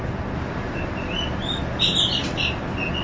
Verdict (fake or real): real